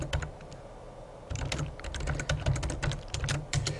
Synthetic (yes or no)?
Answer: no